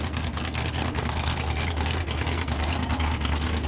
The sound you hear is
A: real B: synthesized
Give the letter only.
B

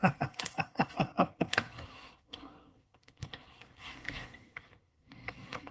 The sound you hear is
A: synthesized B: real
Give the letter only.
A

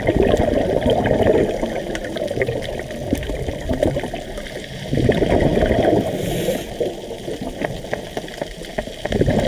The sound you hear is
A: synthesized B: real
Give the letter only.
B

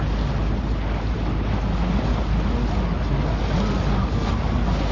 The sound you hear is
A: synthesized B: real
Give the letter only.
B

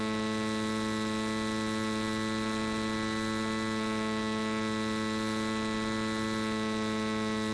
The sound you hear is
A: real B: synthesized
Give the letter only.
A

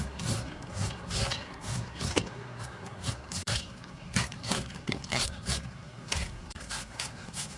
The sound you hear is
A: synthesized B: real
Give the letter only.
A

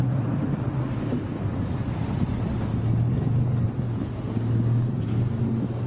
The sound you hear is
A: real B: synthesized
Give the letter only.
A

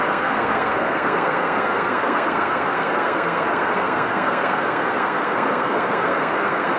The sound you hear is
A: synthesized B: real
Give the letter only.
A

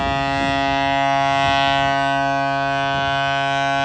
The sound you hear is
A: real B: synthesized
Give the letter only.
A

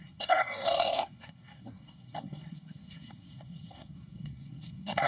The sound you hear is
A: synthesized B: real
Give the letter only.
A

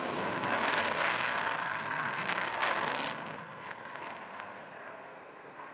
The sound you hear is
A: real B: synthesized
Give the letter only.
B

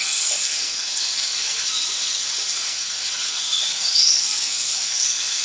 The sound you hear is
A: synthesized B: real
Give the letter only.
A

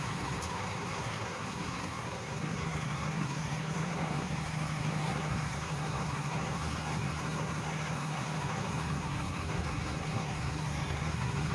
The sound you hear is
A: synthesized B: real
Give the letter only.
A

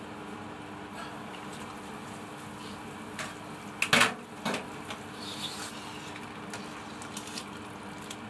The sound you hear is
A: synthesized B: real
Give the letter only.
B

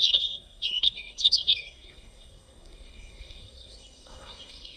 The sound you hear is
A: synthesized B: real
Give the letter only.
A